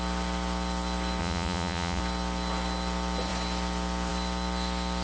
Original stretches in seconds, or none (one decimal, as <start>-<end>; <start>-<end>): 0.0-1.2; 2.0-5.0